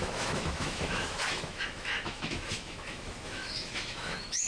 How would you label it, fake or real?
fake